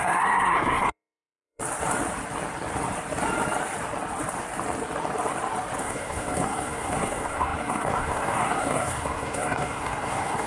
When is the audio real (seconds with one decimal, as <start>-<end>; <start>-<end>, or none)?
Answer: 1.6-5.8

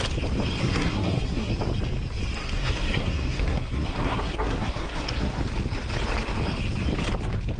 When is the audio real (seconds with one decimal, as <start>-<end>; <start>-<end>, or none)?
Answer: 0.0-0.6; 1.5-2.4; 5.3-7.6

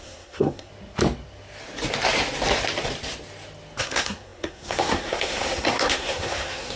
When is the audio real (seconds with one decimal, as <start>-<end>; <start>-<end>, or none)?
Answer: 0.7-3.8